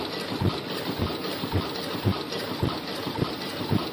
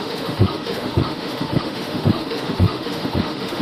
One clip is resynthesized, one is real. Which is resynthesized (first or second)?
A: second